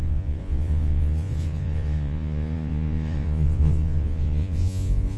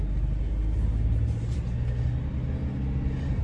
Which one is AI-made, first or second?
first